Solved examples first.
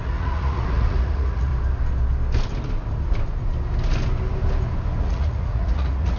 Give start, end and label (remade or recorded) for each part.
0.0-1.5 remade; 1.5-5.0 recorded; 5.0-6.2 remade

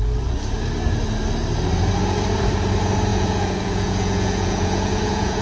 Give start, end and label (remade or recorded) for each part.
0.0-3.1 recorded; 3.1-5.4 remade

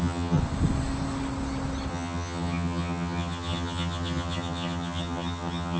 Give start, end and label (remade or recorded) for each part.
0.0-0.4 remade; 0.4-1.9 recorded; 1.9-5.8 remade

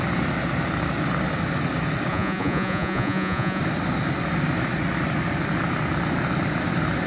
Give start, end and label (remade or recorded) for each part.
0.0-2.1 recorded; 2.1-3.6 remade; 3.6-7.1 recorded

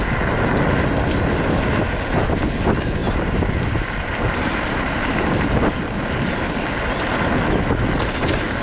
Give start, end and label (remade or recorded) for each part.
0.0-3.0 recorded; 3.0-5.6 remade; 5.6-8.6 recorded